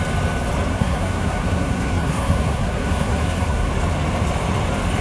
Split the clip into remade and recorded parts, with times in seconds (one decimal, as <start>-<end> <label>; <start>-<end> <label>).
0.0-0.7 recorded; 0.7-3.7 remade; 3.7-5.0 recorded